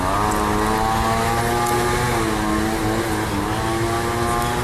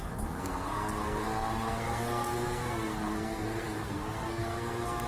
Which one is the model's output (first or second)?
second